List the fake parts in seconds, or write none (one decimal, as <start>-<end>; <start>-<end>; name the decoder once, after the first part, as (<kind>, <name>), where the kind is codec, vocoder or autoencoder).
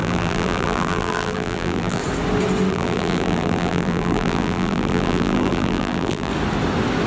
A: 0.0-2.0 (vocoder, BigVGAN v2); 2.7-6.3